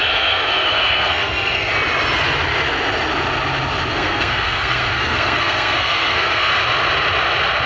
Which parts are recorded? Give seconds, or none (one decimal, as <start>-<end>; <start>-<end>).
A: 1.7-3.9; 6.5-7.7